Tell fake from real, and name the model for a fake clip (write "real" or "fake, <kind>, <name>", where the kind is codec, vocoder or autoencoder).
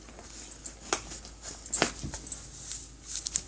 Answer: real